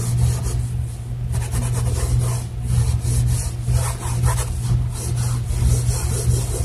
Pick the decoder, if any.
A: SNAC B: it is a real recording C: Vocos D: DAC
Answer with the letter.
B